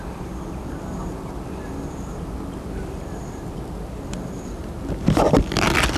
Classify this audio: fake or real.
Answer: real